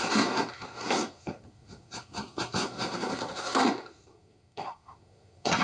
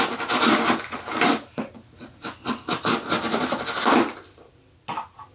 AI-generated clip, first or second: first